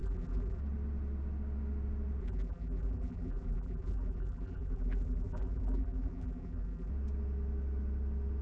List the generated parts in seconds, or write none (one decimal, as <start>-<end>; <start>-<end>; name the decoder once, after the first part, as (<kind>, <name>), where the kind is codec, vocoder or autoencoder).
0.0-0.6 (vocoder, BigVGAN v2); 2.2-6.9